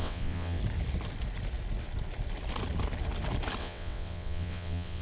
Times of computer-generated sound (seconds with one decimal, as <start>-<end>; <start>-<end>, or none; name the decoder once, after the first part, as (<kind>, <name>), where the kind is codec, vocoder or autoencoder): 0.0-0.6 (vocoder, WaveNeXt); 3.6-5.0

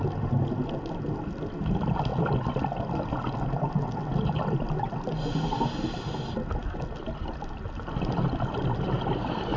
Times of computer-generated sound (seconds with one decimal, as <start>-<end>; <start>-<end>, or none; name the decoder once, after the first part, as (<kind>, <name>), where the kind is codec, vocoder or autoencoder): none

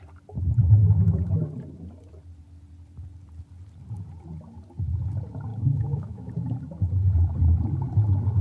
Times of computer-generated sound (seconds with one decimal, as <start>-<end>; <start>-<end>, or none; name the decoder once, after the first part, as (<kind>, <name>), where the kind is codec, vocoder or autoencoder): 0.8-1.4 (autoencoder, DAC-VAE); 5.5-6.3

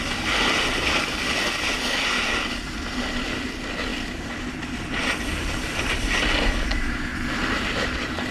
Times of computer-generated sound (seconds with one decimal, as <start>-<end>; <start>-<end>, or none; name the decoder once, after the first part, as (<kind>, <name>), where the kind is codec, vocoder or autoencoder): none

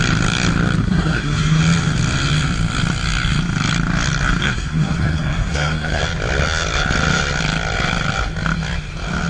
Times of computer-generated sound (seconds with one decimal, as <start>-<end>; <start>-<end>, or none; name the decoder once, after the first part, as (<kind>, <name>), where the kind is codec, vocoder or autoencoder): 0.8-1.6 (codec, SNAC); 4.4-6.0

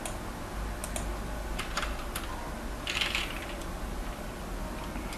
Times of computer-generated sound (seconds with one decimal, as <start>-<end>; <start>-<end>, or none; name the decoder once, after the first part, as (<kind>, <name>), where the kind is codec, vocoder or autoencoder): none